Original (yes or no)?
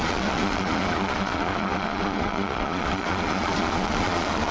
no